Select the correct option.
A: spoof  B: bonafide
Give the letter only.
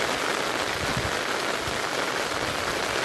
B